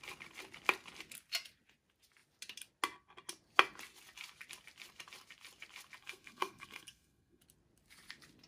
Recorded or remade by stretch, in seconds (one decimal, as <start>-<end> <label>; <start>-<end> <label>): 0.0-6.0 recorded; 6.0-7.4 remade; 7.4-8.5 recorded